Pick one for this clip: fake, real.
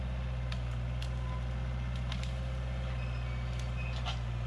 real